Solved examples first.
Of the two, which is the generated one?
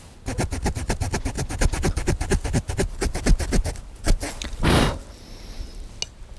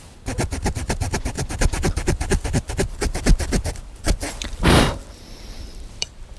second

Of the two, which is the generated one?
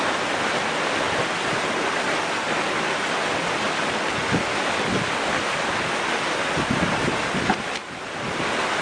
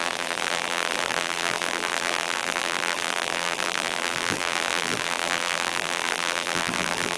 second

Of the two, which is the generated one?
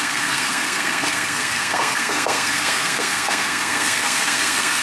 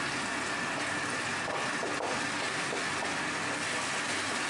first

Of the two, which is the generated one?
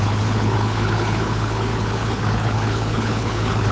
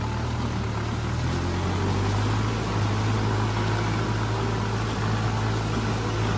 first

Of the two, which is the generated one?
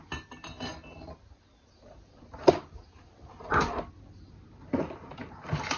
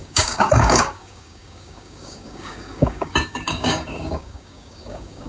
second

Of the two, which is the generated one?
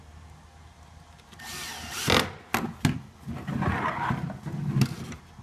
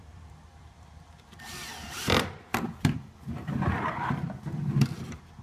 second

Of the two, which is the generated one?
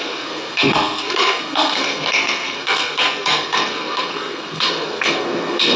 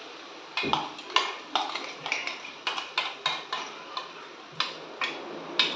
first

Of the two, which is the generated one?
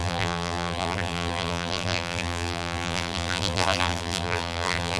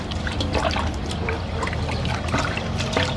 first